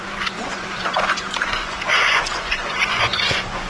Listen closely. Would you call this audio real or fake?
fake